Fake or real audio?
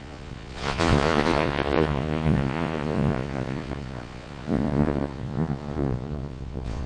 fake